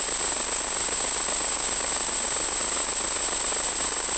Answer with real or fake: real